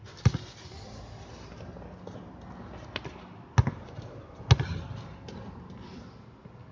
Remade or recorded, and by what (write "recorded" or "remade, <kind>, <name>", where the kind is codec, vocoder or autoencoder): recorded